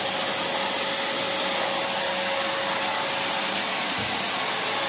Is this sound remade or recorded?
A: recorded